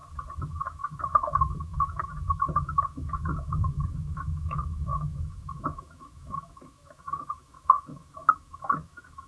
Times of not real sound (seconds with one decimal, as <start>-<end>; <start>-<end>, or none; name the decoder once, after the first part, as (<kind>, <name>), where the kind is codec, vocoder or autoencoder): 0.5-9.3 (autoencoder, DAC-VAE)